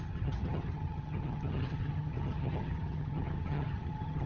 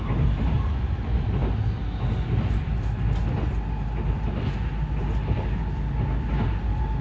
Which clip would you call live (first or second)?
second